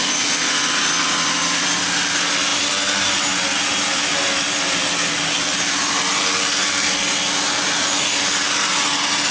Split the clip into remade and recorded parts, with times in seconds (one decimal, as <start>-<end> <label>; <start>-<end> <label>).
0.0-9.3 recorded